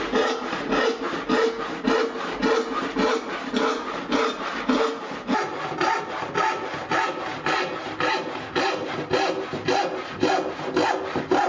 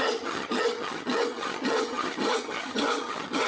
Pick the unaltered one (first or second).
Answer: first